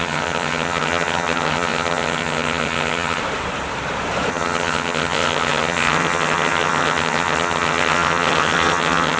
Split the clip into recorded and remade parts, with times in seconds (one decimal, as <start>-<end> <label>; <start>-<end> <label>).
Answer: 0.0-3.2 remade; 3.2-4.3 recorded; 4.3-9.2 remade